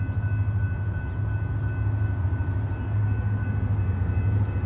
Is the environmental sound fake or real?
real